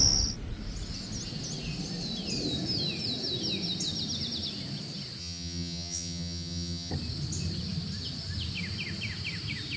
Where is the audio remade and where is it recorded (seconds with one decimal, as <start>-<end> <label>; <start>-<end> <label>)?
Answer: 0.0-5.2 recorded; 5.2-6.9 remade; 6.9-9.8 recorded